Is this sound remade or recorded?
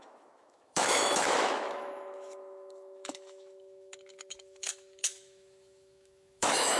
remade